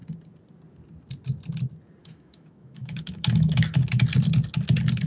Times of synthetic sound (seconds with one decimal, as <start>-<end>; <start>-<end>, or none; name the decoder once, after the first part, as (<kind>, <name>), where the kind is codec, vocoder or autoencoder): 2.0-3.6 (autoencoder, DAC-VAE)